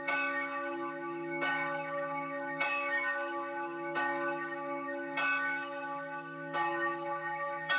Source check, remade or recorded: remade